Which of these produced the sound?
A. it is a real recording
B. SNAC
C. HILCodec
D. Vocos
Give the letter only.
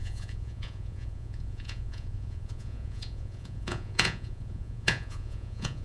D